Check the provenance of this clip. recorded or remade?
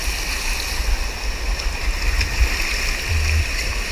recorded